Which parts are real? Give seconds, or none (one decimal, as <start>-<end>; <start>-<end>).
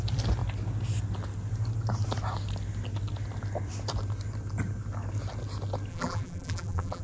0.0-5.9